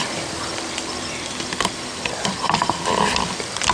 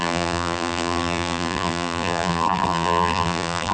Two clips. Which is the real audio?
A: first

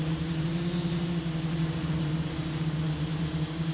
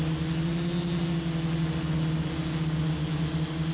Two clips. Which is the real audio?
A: second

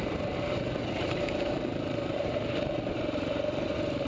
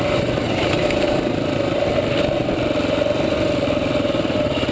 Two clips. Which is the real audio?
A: second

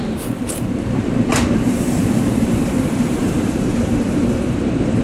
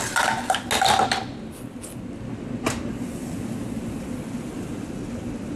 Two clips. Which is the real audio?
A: second